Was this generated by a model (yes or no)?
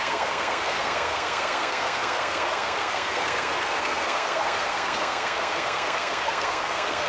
yes